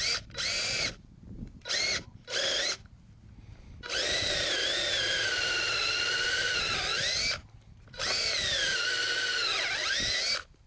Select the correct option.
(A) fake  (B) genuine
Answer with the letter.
B